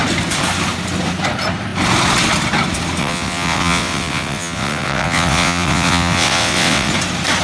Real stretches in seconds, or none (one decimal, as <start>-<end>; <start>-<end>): 0.0-3.0; 6.9-7.4